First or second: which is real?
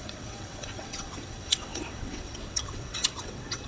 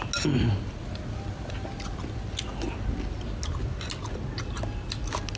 second